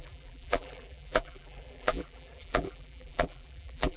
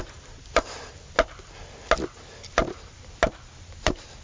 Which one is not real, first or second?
first